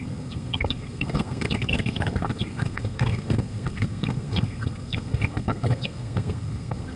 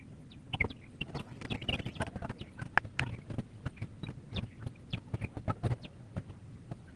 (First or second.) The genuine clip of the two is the second